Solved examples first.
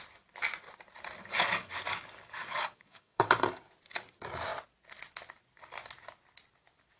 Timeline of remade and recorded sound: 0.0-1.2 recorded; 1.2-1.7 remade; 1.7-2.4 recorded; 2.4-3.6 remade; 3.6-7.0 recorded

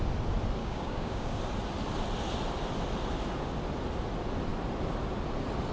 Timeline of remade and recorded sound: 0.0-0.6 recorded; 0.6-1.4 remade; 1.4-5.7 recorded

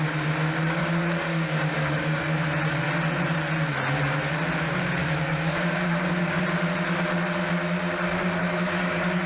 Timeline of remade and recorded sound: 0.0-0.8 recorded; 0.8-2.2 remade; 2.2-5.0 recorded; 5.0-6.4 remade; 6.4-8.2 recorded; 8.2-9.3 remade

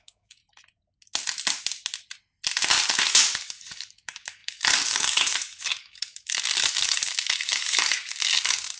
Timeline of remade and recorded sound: 0.0-0.4 remade; 0.4-3.0 recorded; 3.0-8.8 remade

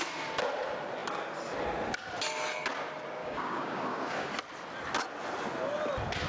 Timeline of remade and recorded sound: 0.0-3.2 recorded; 3.2-4.3 remade; 4.3-6.3 recorded